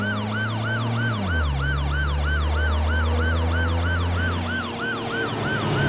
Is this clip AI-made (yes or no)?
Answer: no